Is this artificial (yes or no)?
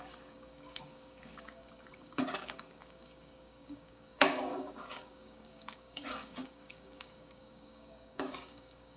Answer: yes